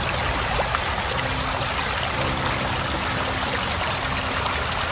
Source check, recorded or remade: recorded